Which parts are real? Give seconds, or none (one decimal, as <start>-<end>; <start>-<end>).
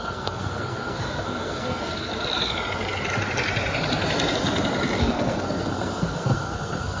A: 2.1-5.0